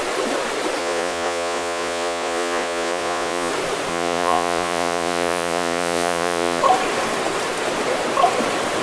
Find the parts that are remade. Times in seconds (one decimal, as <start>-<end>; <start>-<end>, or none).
0.8-3.5; 3.9-6.6